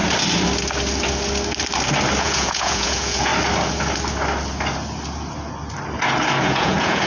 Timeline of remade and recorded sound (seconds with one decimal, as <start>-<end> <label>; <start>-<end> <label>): 0.0-2.2 recorded; 2.2-3.3 remade; 3.3-6.4 recorded; 6.4-7.1 remade